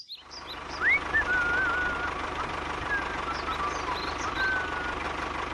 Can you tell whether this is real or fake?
real